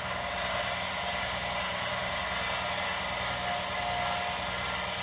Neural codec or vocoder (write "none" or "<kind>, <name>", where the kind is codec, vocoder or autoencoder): none